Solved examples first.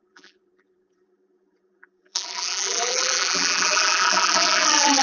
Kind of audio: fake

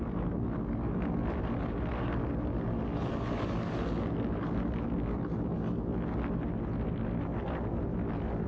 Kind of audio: real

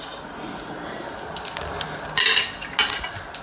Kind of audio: real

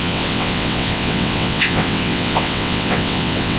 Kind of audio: fake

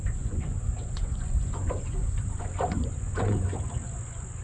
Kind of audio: fake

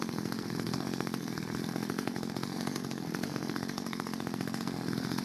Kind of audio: fake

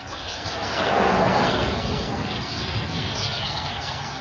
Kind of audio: fake